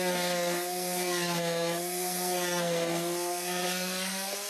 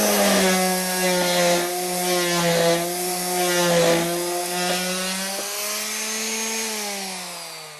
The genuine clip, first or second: second